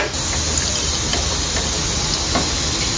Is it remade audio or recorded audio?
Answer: recorded